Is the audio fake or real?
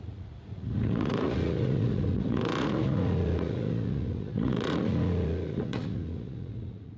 fake